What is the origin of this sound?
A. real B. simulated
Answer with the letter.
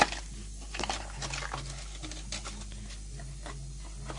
A